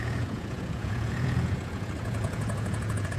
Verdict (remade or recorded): remade